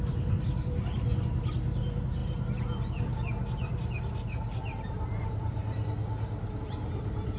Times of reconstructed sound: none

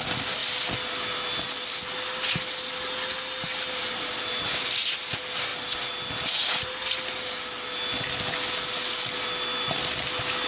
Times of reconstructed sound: none

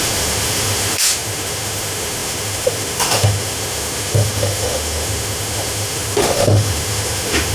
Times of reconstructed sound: 0.0-7.5 (autoencoder, DAC-VAE)

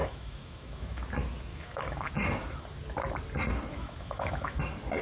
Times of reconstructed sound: 0.0-1.0 (autoencoder, DAC-VAE); 1.5-2.1; 3.7-4.6